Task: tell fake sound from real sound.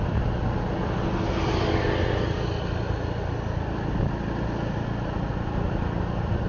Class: real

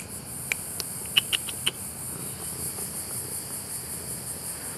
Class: real